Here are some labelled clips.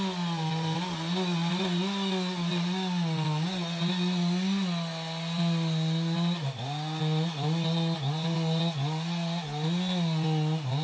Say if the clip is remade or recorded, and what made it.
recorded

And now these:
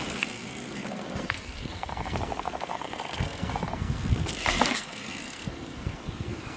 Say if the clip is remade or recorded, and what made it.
remade, codec, SNAC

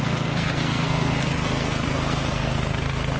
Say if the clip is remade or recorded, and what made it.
remade, codec, SNAC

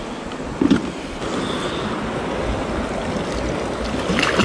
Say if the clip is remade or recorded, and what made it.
recorded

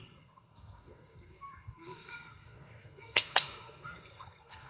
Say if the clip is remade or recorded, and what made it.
remade, codec, SNAC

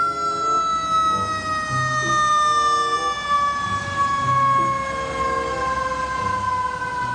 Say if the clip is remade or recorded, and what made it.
recorded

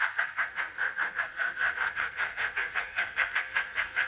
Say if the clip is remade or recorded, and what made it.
remade, codec, SNAC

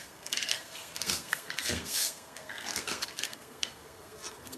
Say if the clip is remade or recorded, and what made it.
remade, codec, SNAC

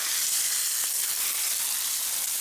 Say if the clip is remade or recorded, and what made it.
recorded